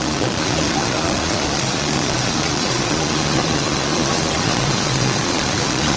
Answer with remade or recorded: remade